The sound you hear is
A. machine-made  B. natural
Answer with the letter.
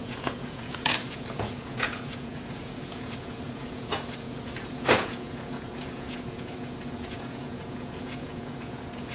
A